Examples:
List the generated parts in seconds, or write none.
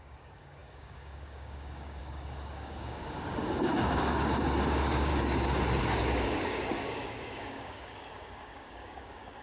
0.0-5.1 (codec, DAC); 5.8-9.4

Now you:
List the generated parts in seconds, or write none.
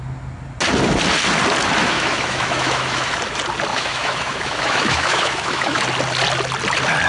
1.8-3.1 (autoencoder, DAC-VAE); 3.7-5.8